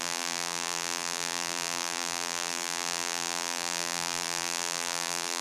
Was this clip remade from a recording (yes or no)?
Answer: yes